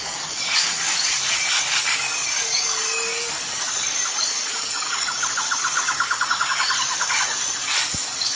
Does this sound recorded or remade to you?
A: remade